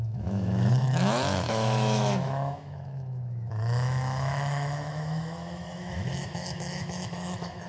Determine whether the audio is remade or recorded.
remade